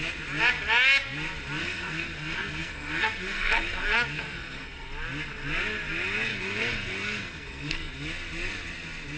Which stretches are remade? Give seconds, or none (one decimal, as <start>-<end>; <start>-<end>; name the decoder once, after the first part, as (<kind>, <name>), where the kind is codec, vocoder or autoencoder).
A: 1.6-4.9 (codec, SNAC); 6.3-7.9